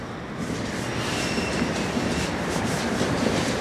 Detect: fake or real fake